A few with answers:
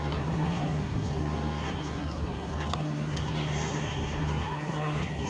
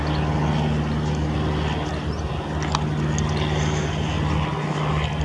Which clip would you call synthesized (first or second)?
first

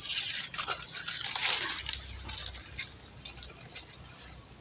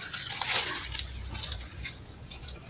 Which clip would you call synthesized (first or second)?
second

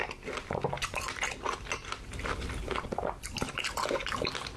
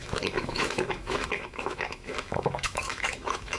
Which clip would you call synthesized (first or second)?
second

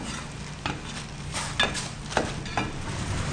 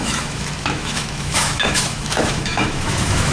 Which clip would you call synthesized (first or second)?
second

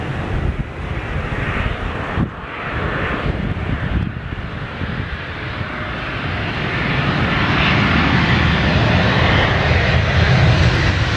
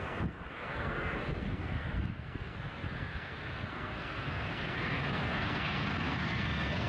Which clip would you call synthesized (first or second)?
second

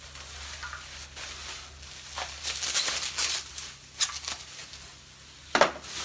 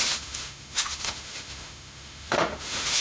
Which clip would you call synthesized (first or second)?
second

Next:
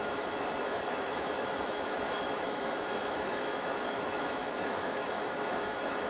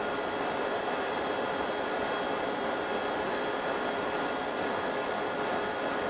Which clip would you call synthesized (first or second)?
first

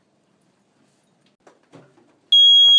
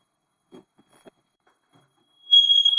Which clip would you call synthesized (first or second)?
second